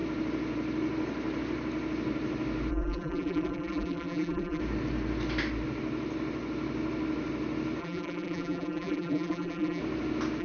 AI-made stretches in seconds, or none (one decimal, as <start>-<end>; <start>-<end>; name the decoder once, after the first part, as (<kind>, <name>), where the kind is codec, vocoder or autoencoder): 2.7-4.6 (vocoder, BigVGAN v2); 7.8-9.8